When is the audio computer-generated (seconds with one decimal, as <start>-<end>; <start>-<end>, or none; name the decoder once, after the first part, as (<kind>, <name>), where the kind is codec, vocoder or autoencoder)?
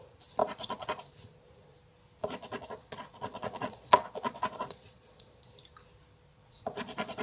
0.4-1.0 (vocoder, Vocos); 2.2-5.3; 6.3-7.2